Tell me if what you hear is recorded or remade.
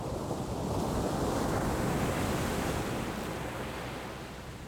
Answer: recorded